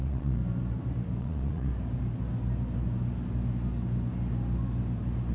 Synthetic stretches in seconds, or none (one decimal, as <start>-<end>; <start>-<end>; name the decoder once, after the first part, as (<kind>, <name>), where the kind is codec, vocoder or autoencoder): 0.0-0.4 (vocoder, Vocos); 1.2-1.7